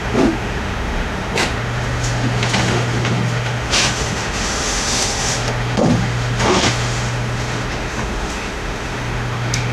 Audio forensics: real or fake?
fake